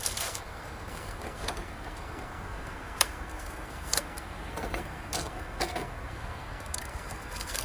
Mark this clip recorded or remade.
remade